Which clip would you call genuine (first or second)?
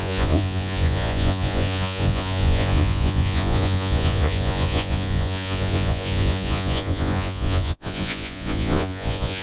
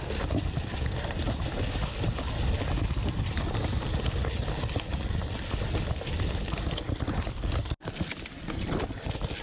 second